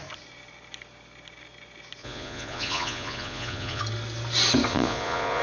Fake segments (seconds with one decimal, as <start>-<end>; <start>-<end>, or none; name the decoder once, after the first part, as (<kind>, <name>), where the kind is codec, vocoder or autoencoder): 2.0-3.8 (vocoder, Vocos); 4.7-5.4